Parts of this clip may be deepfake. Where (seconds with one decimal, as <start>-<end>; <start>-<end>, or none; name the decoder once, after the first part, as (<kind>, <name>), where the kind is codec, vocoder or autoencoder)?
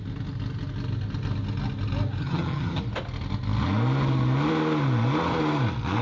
2.2-2.8 (vocoder, HiFi-GAN)